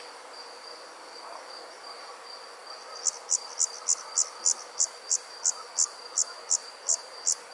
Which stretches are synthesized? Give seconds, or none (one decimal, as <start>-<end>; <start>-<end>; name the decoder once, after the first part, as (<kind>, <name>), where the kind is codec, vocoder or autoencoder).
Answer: none